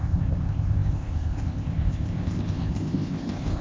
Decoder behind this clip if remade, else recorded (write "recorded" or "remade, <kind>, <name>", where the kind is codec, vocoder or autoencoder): remade, codec, ZipCodec